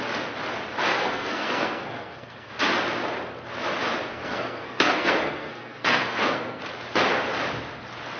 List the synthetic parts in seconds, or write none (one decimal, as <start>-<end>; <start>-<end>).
0.9-2.5; 4.1-6.6